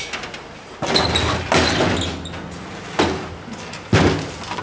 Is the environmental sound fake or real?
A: real